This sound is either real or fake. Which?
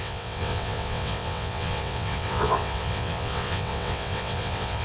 fake